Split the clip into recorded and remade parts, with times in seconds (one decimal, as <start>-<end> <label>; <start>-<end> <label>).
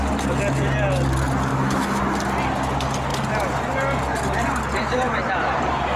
0.0-1.5 recorded; 1.5-2.0 remade; 2.0-6.0 recorded